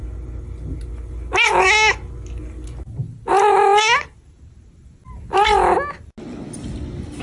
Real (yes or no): yes